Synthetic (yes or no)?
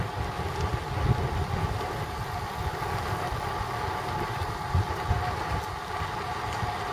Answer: no